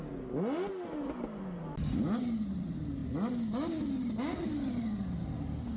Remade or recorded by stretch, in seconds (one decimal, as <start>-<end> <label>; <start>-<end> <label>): 0.0-5.8 recorded

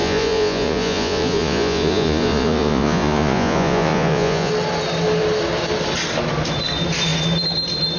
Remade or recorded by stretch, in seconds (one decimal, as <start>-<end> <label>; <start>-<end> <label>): 0.0-4.5 remade; 4.5-8.0 recorded